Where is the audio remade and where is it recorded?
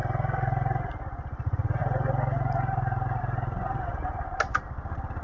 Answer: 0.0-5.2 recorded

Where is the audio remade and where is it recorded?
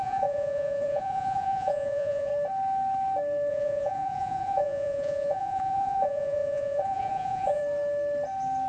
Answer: 0.0-2.3 remade; 2.3-3.5 recorded; 3.5-7.6 remade; 7.6-8.7 recorded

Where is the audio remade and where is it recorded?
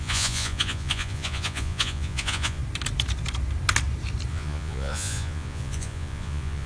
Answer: 0.0-2.6 remade; 2.6-4.3 recorded; 4.3-6.7 remade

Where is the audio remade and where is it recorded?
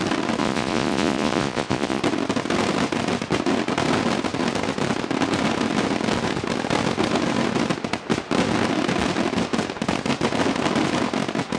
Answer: 0.0-0.4 recorded; 0.4-2.0 remade; 2.0-11.6 recorded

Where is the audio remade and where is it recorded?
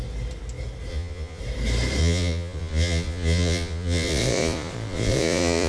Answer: 0.0-0.9 recorded; 0.9-1.4 remade; 1.4-2.0 recorded; 2.0-5.7 remade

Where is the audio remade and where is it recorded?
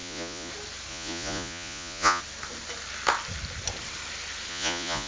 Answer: 0.0-0.5 remade; 0.5-0.9 recorded; 0.9-2.2 remade; 2.2-4.5 recorded; 4.5-5.1 remade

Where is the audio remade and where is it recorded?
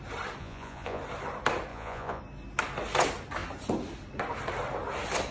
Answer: 0.0-0.4 recorded; 0.4-1.0 remade; 1.0-1.7 recorded; 1.7-2.2 remade; 2.2-5.3 recorded